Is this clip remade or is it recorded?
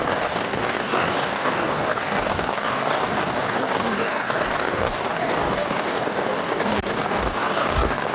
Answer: remade